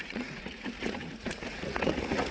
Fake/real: fake